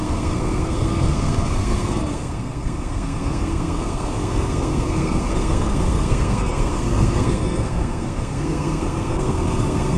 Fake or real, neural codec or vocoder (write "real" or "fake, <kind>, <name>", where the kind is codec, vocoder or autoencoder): fake, codec, SNAC